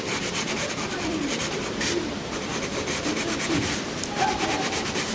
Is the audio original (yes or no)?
no